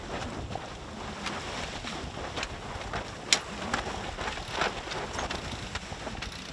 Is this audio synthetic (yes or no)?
no